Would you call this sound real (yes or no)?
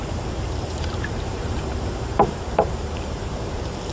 no